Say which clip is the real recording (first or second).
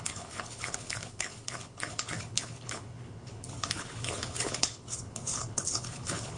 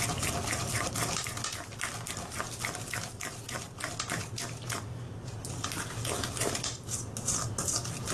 second